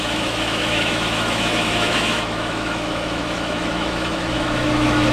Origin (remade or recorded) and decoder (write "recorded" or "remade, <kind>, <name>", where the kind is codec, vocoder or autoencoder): remade, autoencoder, DAC-VAE